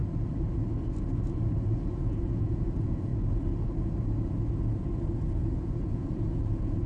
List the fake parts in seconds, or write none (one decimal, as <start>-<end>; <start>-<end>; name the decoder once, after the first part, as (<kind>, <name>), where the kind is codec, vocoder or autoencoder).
2.0-3.1 (vocoder, Vocos); 5.2-6.9